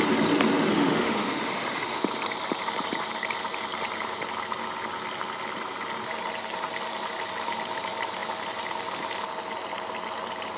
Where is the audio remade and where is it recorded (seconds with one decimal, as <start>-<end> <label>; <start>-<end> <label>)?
0.0-0.7 recorded; 0.7-2.0 remade; 2.0-10.6 recorded

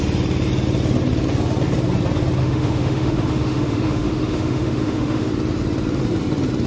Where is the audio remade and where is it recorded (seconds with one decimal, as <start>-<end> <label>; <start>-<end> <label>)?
0.0-2.4 recorded; 2.4-5.3 remade; 5.3-6.7 recorded

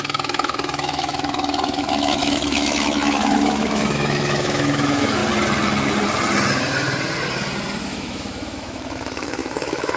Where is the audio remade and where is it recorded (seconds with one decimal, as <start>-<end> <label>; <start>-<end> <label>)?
0.0-5.2 remade; 5.2-7.8 recorded; 7.8-10.0 remade

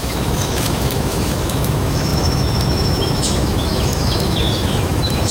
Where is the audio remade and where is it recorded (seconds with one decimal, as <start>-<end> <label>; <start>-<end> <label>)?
0.0-5.3 remade